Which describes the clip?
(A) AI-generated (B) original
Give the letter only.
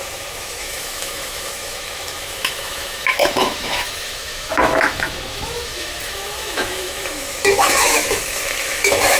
A